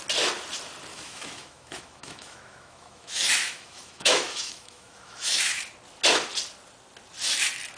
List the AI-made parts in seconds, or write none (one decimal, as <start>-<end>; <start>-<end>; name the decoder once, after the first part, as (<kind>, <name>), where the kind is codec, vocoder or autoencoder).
0.9-5.6 (autoencoder, DAC-VAE)